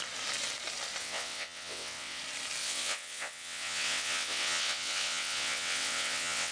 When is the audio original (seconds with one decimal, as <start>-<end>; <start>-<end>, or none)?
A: 0.0-1.0; 2.2-2.6